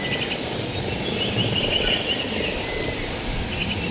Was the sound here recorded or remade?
recorded